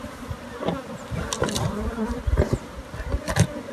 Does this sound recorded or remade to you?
recorded